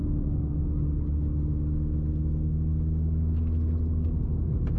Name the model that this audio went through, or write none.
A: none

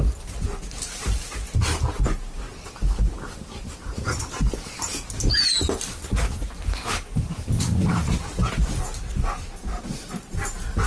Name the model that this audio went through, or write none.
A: none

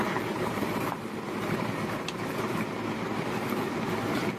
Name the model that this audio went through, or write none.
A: vocoder, BigVGAN v2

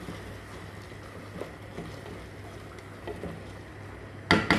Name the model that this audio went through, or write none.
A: none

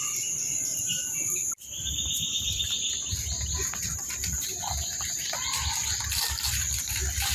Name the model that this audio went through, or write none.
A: vocoder, BigVGAN v2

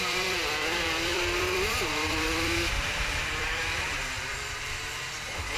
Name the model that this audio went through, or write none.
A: vocoder, BigVGAN v2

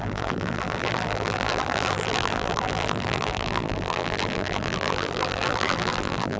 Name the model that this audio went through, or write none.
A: vocoder, BigVGAN v2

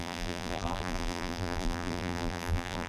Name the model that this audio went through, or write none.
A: vocoder, BigVGAN v2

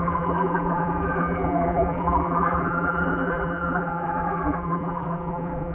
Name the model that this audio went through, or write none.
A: vocoder, BigVGAN v2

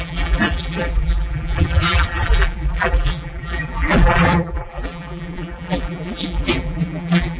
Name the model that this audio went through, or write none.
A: vocoder, BigVGAN v2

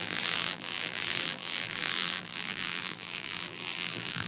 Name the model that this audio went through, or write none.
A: vocoder, BigVGAN v2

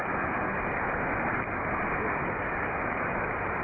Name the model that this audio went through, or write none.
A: none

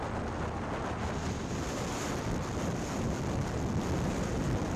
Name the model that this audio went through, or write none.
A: none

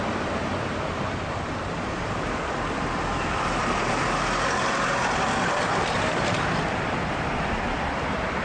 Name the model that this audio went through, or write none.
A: vocoder, BigVGAN v2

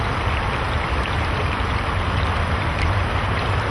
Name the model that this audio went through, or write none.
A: vocoder, BigVGAN v2